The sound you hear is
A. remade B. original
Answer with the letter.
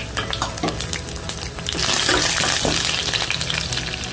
B